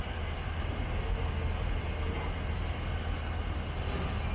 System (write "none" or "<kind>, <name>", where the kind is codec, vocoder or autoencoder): none